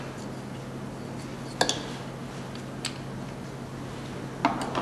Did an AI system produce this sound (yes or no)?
no